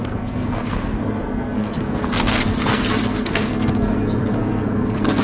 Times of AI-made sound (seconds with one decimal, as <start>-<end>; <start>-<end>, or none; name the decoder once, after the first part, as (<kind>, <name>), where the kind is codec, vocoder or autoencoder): 0.0-5.2 (codec, SNAC)